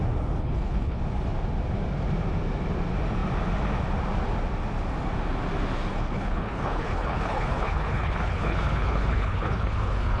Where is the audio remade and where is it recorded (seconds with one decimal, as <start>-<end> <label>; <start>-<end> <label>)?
0.0-0.4 recorded; 0.4-1.0 remade; 1.0-5.9 recorded; 5.9-10.2 remade